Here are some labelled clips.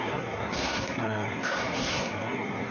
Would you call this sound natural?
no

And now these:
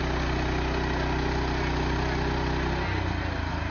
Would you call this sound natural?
yes